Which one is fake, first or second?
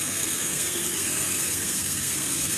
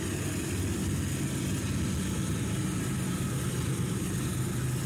first